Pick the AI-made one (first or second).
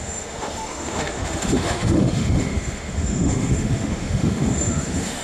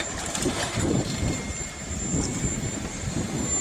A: first